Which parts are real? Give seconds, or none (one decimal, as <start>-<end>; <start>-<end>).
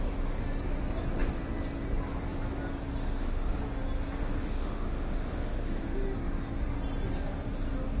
0.0-3.0; 3.6-4.2; 5.8-8.0